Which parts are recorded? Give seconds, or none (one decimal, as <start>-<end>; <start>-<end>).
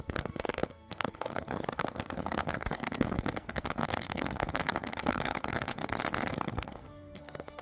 5.8-6.3